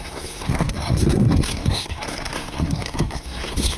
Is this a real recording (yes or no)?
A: no